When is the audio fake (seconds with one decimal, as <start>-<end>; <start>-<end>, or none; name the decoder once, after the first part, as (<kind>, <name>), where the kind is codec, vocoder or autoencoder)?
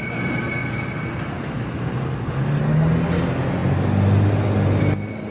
none